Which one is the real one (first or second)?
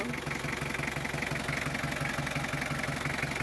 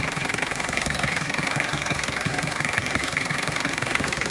first